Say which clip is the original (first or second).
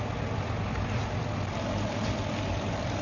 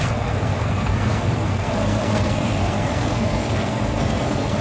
first